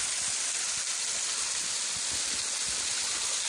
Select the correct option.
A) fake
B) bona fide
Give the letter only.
B